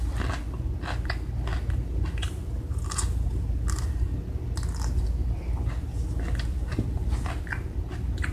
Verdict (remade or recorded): recorded